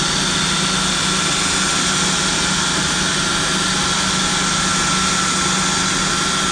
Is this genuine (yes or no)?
yes